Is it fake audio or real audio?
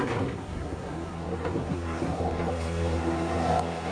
fake